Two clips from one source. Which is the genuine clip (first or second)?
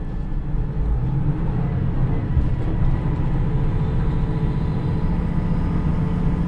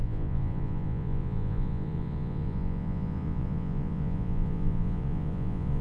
first